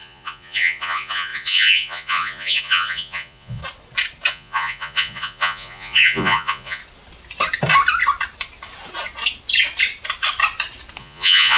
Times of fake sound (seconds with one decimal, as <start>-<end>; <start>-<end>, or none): 0.0-3.6; 4.3-6.8; 11.0-11.6